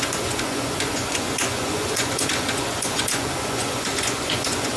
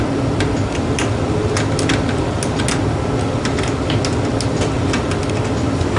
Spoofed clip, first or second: first